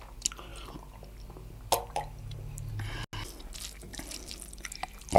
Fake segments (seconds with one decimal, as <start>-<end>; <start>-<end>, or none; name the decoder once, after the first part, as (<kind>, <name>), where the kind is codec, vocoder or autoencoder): 1.8-2.7 (vocoder, BigVGAN v2); 3.9-4.7